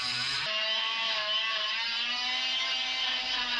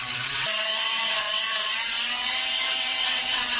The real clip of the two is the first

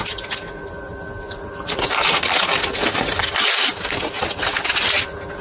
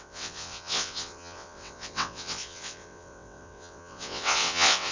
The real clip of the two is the first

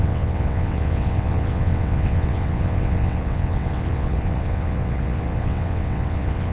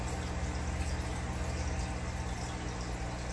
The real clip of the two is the second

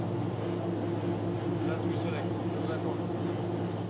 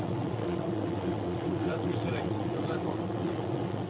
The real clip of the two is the first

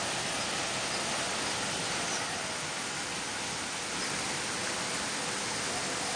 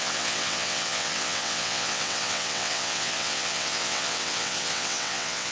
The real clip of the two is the first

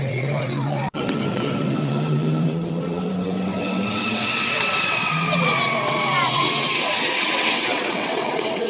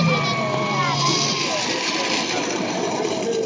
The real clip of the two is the second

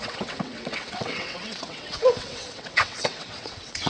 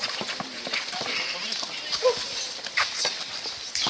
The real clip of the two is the second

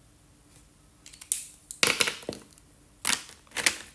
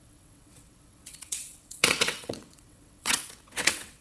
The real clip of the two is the first